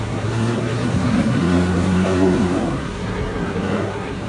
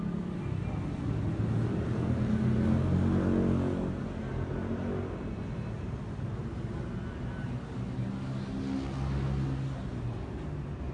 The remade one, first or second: first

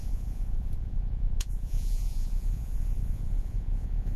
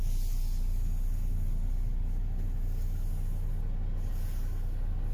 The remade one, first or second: first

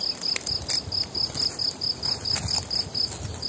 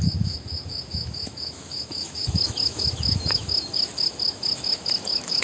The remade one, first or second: second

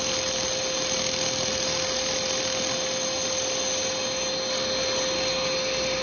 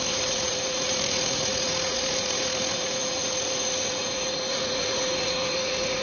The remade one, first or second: second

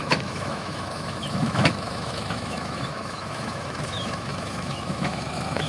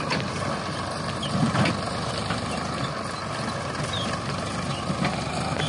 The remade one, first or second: first